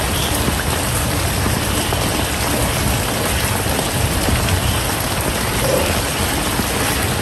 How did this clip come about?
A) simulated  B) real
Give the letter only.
B